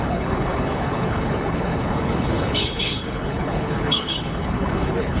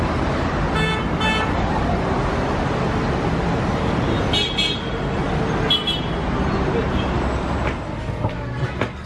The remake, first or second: first